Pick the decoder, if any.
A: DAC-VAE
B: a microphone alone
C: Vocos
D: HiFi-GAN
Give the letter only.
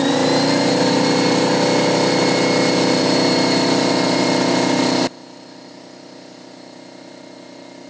B